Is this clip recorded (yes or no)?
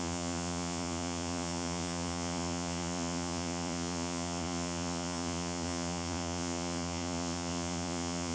no